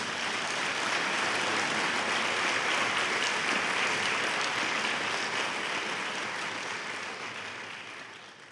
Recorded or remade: recorded